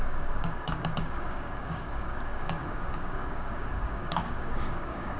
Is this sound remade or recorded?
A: remade